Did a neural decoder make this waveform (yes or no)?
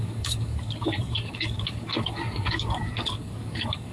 yes